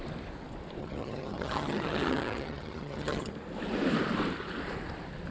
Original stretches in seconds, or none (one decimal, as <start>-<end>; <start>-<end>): 0.0-0.8; 3.3-5.3